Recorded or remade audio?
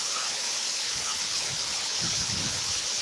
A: remade